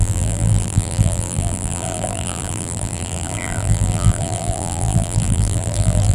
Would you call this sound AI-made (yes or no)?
yes